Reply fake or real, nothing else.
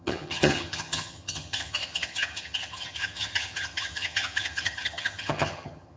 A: fake